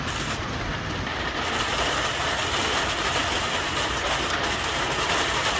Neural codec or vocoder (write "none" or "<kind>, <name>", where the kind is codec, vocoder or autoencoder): none